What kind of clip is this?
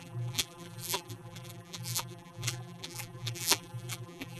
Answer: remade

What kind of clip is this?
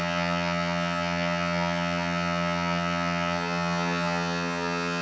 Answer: remade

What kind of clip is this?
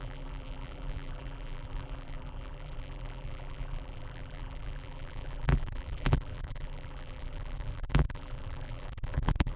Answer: remade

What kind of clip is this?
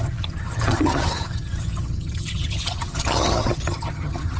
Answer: remade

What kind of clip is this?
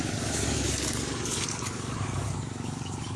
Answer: remade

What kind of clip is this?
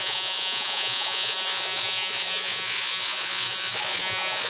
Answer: remade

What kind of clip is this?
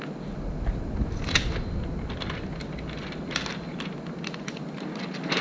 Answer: recorded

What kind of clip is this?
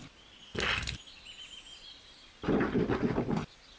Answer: recorded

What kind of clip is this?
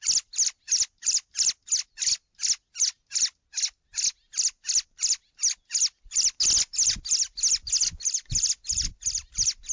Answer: recorded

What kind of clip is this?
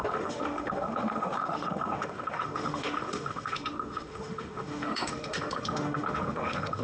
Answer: remade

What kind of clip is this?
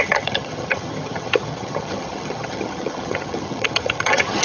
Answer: remade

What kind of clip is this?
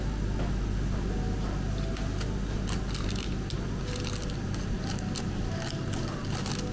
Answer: recorded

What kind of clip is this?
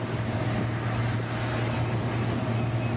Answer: recorded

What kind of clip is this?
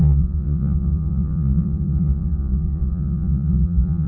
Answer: remade